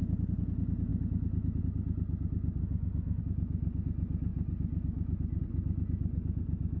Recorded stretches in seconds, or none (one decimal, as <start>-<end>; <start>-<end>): 0.0-2.6; 3.2-6.8